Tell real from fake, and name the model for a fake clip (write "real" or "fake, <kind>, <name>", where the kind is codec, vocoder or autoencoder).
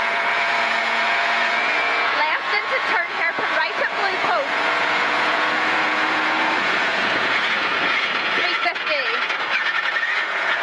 fake, vocoder, Vocos